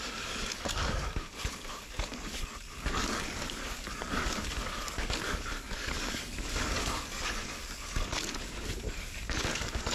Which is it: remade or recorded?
remade